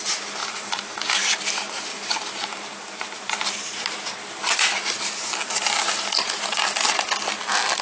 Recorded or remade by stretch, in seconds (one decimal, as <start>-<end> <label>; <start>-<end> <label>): 0.0-0.4 recorded; 0.4-1.0 remade; 1.0-1.9 recorded; 1.9-3.7 remade; 3.7-7.8 recorded